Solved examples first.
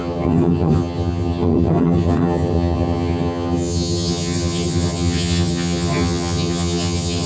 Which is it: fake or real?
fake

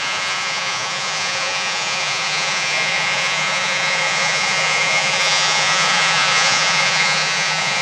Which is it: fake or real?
fake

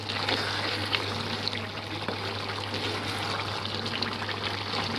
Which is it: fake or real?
real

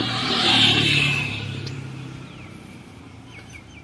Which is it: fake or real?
fake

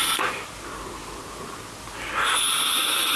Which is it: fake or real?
real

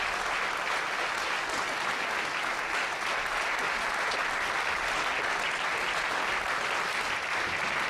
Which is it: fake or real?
real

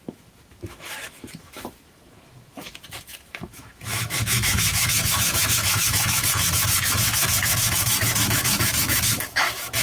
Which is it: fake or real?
fake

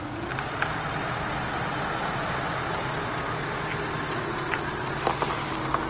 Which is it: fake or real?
real